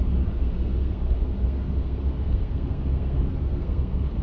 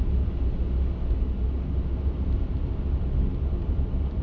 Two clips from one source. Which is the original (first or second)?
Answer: second